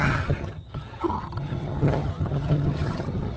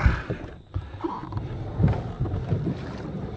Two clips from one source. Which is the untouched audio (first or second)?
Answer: second